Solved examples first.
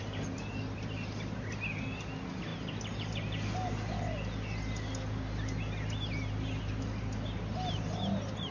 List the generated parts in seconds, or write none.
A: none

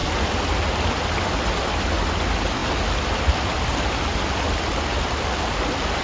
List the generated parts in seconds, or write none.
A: none